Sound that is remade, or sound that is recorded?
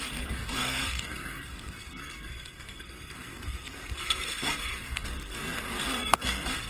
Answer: remade